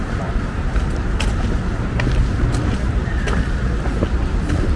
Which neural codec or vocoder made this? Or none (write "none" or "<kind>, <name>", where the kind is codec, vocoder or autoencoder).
none